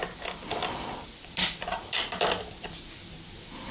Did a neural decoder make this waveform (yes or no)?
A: no